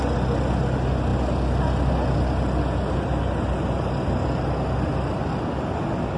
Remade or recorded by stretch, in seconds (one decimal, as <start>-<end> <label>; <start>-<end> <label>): 0.0-6.2 recorded